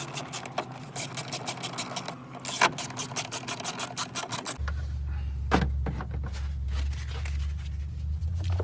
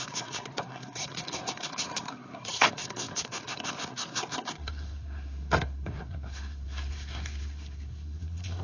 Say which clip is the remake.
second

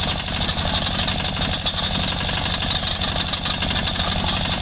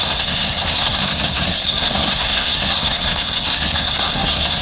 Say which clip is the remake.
second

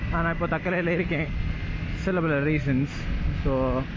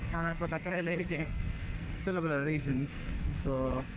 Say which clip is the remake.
second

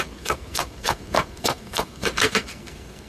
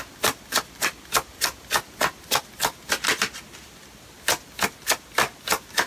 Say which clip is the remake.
first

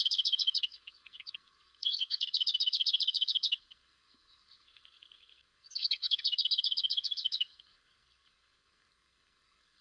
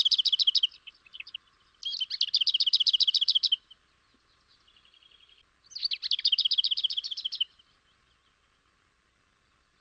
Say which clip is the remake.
first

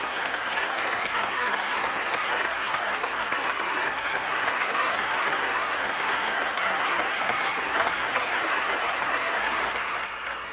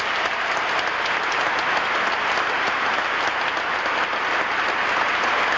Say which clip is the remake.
first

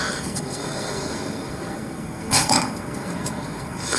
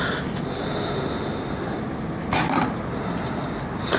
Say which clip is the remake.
first